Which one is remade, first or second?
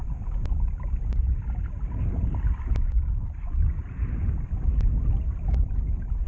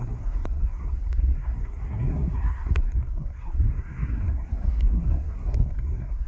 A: second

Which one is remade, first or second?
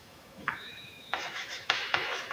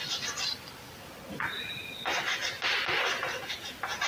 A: first